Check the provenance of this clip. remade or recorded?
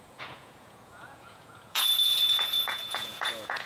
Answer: remade